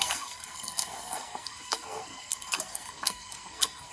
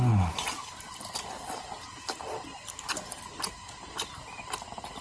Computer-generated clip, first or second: first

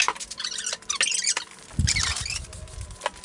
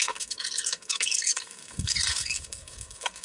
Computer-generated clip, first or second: second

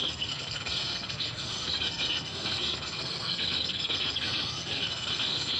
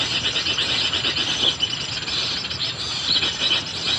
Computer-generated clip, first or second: first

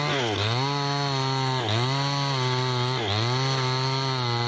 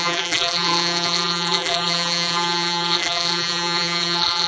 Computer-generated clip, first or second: second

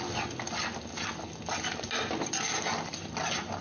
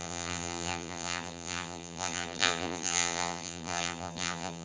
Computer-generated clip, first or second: second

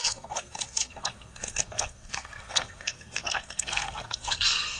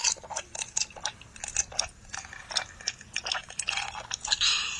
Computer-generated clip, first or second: first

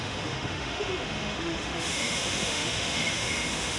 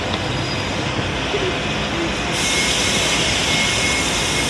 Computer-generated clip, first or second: first